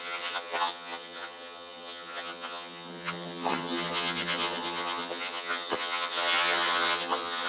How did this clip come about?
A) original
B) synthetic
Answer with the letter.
B